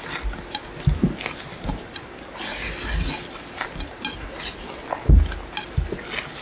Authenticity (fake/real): real